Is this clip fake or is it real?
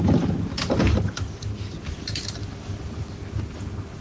real